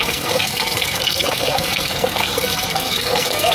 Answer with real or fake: fake